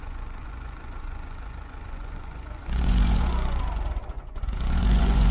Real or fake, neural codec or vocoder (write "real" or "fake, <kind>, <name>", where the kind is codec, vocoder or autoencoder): fake, vocoder, Vocos